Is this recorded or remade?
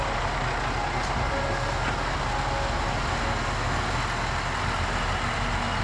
recorded